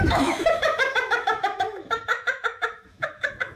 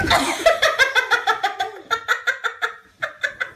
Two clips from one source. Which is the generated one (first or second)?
first